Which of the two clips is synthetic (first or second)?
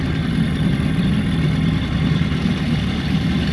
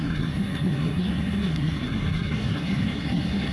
second